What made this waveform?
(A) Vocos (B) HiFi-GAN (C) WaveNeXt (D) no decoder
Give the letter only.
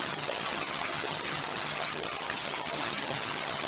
B